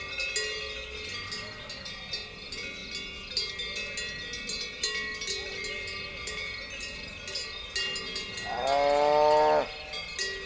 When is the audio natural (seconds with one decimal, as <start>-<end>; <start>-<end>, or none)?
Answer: 0.0-10.5